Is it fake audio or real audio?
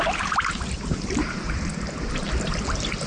real